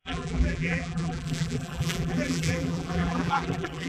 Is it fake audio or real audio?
fake